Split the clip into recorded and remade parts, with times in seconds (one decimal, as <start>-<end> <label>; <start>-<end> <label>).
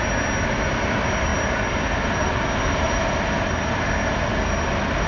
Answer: 0.0-5.1 recorded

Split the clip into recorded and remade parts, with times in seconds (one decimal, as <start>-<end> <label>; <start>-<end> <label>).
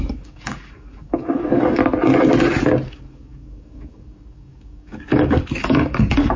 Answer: 0.0-1.8 remade; 1.8-2.9 recorded; 2.9-6.4 remade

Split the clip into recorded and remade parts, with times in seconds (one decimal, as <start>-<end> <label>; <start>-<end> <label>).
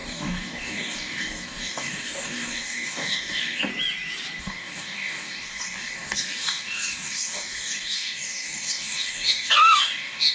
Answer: 0.0-3.7 remade; 3.7-4.4 recorded; 4.4-10.3 remade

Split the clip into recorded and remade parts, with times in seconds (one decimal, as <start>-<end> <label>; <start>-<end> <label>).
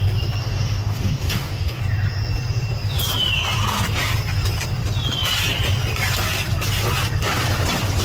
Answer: 0.0-0.4 recorded; 0.4-1.8 remade; 1.8-8.0 recorded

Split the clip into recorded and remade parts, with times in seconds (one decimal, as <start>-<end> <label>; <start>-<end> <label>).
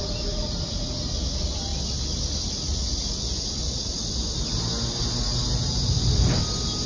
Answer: 0.0-6.9 recorded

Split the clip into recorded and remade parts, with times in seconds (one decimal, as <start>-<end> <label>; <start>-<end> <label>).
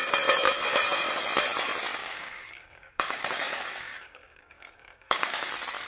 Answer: 0.0-2.0 recorded; 2.0-5.5 remade; 5.5-5.9 recorded